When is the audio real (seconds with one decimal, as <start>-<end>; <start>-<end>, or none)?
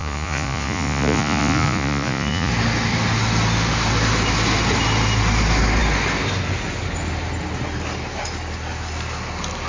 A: 2.5-9.7